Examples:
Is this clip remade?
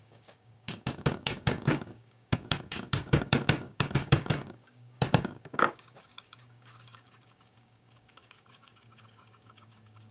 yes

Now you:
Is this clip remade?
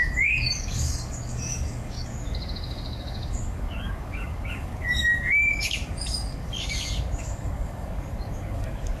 yes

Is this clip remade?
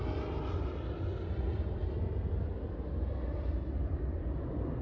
no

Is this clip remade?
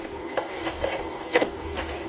yes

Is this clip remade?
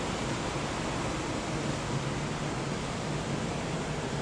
no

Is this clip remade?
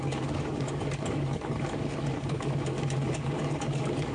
yes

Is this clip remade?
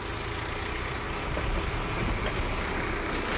no